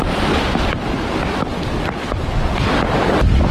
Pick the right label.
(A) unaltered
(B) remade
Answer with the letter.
A